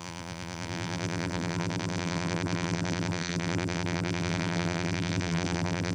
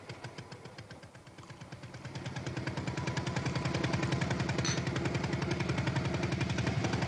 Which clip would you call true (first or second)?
second